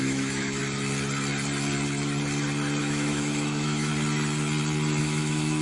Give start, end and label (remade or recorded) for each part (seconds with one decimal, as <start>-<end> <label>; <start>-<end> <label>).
0.0-0.6 remade; 0.6-2.8 recorded; 2.8-3.9 remade; 3.9-5.0 recorded; 5.0-5.6 remade